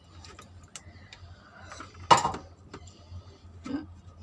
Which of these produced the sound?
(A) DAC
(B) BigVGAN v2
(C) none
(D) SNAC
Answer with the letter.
C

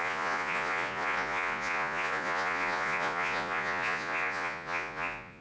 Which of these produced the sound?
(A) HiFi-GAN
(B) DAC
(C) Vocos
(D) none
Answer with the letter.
C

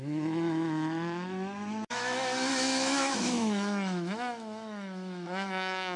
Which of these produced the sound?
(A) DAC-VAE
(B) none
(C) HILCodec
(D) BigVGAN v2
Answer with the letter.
A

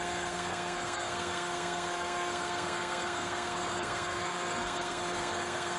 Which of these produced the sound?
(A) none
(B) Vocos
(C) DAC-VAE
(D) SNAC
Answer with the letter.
D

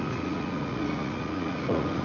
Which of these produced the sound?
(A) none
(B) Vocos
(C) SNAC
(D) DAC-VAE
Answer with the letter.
B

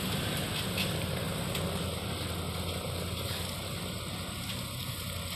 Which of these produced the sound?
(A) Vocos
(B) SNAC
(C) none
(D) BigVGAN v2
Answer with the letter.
C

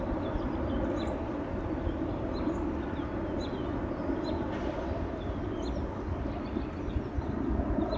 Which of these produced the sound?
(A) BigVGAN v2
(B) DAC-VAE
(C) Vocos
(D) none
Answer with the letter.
D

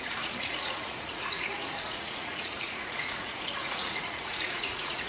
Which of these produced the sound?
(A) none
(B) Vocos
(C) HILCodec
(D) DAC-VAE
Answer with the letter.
B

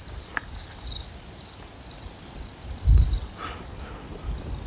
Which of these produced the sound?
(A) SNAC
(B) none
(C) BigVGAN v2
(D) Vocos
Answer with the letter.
B